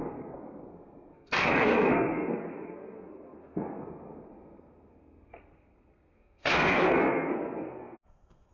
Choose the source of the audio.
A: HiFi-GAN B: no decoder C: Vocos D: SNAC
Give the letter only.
D